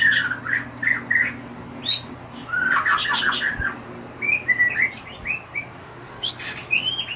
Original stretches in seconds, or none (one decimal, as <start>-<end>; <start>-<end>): 0.0-5.8; 6.3-7.2